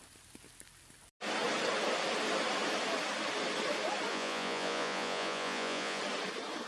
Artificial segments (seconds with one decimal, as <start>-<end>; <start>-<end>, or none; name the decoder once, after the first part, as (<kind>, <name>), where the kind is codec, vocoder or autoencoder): 4.1-6.0 (vocoder, Vocos)